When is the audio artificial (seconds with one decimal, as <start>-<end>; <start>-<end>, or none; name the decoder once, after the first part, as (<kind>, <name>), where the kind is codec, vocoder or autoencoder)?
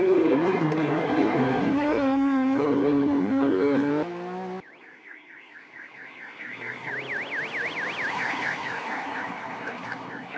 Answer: 0.0-3.9 (codec, SNAC); 4.8-6.9; 8.1-10.4